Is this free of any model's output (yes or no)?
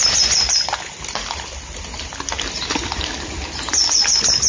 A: yes